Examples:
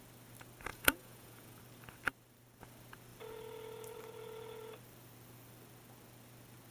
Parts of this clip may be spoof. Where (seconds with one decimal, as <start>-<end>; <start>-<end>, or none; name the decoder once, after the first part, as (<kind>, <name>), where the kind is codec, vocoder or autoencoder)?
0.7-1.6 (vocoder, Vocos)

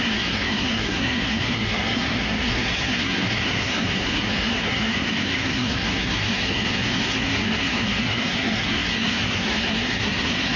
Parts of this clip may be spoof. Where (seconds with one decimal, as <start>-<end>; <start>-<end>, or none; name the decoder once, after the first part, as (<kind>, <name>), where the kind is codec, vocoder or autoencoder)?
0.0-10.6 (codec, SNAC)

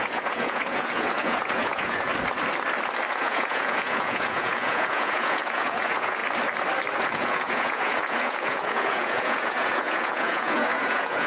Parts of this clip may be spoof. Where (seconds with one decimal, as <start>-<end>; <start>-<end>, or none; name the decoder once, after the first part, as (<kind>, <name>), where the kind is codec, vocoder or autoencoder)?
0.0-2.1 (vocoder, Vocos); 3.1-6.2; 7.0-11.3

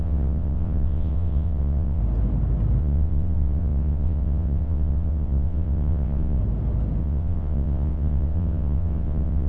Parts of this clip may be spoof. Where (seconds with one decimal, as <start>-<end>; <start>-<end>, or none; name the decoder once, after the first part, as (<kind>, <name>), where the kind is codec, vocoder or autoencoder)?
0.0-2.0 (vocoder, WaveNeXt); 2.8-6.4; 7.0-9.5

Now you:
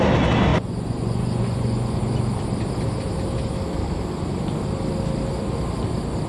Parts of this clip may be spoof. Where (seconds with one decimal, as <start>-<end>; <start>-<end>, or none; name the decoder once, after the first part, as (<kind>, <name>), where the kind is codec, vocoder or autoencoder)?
0.5-2.0 (vocoder, Vocos)

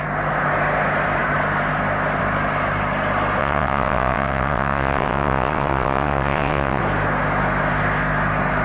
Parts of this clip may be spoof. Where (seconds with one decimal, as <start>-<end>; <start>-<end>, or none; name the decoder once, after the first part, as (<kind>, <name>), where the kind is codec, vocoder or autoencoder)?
3.4-6.8 (vocoder, WaveNeXt)

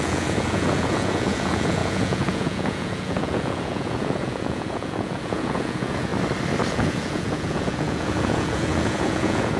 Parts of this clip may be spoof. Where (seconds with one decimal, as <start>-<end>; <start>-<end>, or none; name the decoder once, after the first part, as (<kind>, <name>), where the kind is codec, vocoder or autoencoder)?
0.0-6.1 (vocoder, Vocos); 6.7-9.6